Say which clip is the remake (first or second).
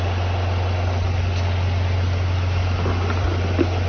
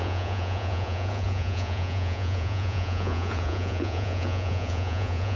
second